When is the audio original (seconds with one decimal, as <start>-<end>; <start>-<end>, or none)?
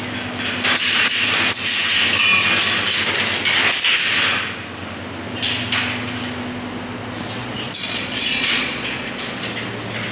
0.0-7.4; 9.1-10.1